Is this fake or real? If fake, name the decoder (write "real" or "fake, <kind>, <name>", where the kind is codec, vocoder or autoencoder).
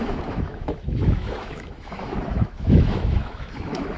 fake, autoencoder, DAC-VAE